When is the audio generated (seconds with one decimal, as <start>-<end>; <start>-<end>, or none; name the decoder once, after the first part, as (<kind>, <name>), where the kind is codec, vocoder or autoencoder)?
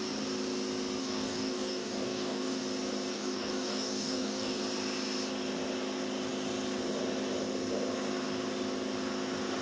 1.0-2.6 (codec, DAC); 3.1-4.6